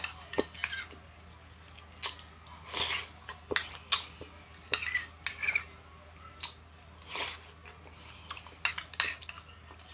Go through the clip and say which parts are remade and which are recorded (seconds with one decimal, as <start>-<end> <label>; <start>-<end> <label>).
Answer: 0.0-9.9 recorded